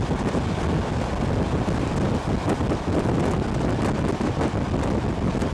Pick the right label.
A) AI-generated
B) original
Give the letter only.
B